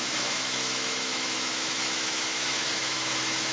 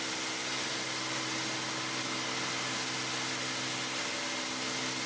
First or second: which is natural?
second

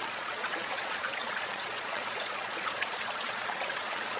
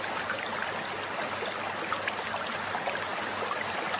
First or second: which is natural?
second